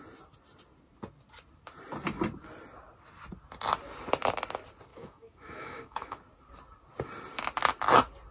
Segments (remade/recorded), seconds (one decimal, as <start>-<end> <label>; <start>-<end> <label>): 0.0-4.9 recorded; 4.9-6.2 remade; 6.2-8.3 recorded